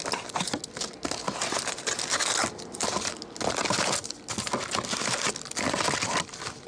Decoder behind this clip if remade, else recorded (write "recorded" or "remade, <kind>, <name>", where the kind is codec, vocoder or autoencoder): recorded